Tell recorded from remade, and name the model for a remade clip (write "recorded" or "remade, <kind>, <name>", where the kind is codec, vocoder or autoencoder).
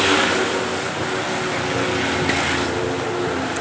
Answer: recorded